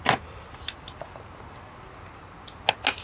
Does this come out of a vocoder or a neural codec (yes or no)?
no